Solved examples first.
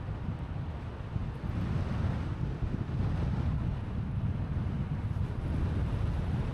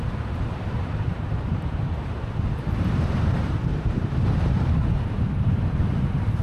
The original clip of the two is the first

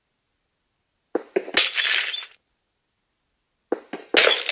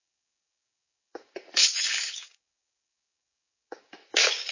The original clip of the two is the first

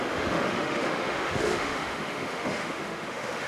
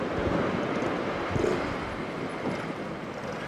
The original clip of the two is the second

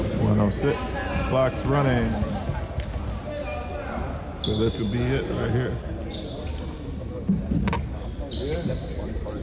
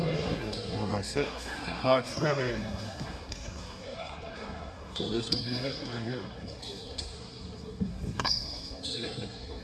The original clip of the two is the first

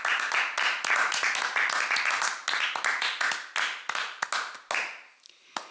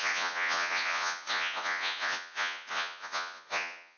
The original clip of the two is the first